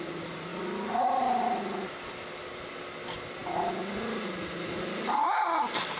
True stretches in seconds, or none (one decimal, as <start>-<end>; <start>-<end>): 0.0-6.0